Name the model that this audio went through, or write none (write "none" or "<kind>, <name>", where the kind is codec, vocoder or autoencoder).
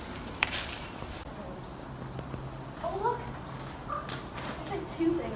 none